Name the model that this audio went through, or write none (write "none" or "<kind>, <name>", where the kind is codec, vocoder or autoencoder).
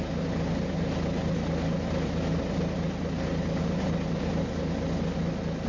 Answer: none